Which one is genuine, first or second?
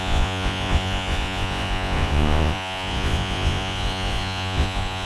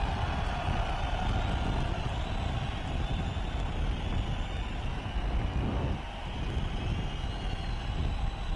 second